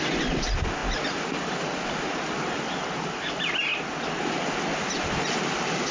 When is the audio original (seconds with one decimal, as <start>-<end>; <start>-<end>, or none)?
0.0-5.9